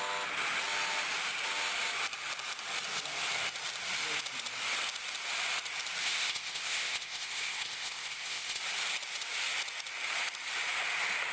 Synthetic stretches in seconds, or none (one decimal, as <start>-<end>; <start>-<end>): 6.0-8.6